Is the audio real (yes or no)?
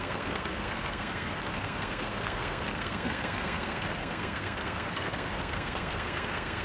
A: no